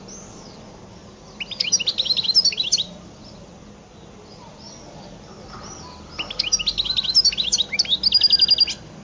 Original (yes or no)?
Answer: yes